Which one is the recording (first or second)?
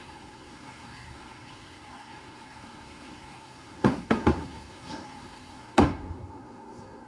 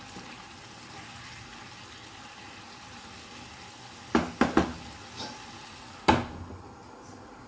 second